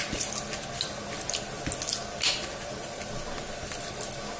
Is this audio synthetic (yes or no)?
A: no